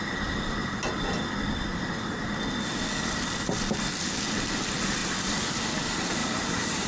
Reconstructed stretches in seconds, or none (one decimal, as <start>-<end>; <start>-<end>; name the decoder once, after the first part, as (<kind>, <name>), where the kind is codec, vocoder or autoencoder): 6.2-6.9 (vocoder, BigVGAN v2)